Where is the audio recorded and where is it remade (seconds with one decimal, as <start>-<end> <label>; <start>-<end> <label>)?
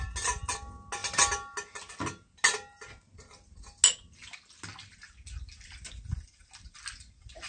0.0-7.5 recorded